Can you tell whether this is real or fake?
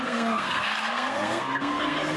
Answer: fake